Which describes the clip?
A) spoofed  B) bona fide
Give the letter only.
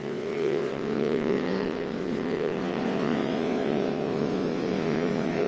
A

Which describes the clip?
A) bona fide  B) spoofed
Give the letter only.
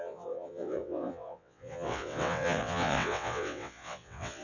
B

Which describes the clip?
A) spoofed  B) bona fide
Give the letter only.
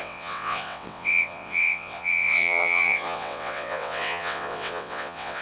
A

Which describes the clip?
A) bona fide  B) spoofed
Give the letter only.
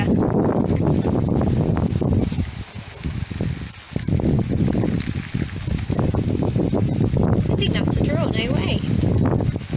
A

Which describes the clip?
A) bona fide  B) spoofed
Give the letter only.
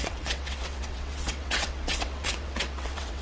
B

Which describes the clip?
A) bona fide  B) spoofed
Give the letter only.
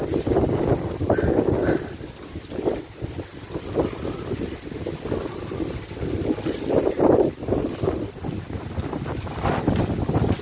A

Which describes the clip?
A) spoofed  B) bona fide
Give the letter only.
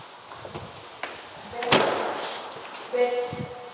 B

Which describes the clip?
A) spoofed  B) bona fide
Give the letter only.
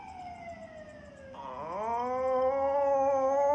B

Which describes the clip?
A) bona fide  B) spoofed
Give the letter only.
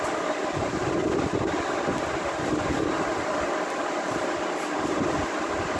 A